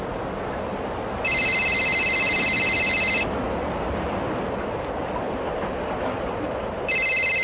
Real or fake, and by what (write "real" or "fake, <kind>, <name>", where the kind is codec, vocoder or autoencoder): real